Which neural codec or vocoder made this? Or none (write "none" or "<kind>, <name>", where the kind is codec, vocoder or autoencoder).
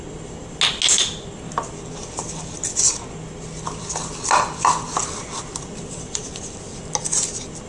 none